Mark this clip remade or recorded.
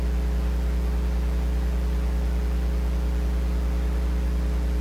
recorded